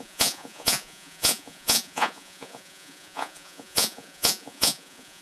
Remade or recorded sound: remade